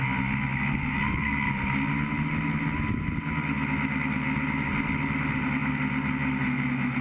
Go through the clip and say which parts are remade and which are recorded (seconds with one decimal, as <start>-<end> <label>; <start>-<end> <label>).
0.0-7.0 recorded